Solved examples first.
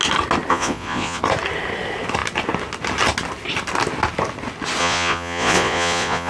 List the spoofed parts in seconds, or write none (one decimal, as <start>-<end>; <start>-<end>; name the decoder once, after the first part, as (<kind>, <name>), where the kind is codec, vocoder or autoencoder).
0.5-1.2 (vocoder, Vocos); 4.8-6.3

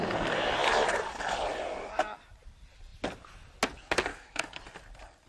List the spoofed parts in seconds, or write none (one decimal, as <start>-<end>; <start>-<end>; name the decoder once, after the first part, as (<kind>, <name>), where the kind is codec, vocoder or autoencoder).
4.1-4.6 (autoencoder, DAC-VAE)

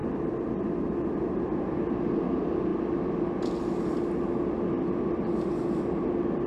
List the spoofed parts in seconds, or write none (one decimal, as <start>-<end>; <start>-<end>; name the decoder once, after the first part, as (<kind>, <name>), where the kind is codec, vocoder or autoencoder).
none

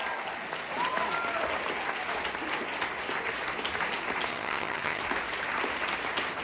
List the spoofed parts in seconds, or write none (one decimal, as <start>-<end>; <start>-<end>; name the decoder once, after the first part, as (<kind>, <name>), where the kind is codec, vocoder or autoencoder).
4.3-5.0 (vocoder, HiFi-GAN)